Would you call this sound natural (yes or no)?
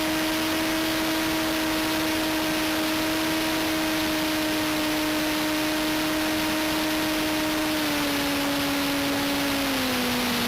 yes